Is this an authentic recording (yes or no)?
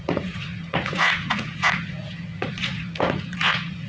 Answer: no